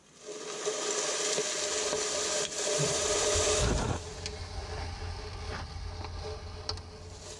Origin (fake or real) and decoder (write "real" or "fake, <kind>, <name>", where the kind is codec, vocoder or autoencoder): real